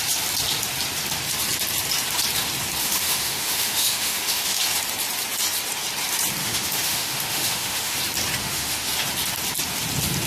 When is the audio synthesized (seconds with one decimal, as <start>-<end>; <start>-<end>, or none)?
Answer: 2.8-4.6; 6.4-8.0; 8.4-8.9